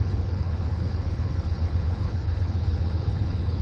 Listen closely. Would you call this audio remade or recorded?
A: remade